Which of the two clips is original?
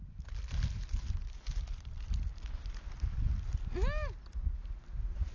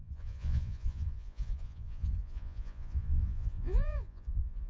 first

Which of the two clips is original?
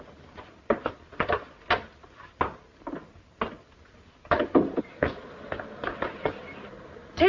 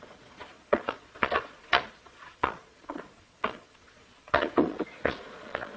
first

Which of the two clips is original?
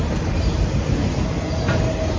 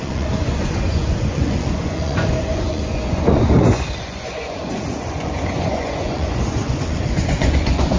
first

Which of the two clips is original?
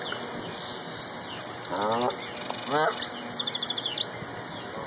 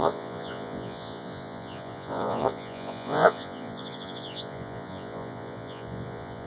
first